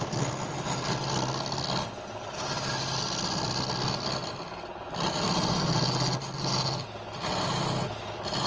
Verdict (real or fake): real